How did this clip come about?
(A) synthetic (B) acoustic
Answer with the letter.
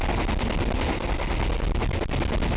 B